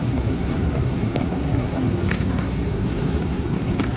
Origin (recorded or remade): remade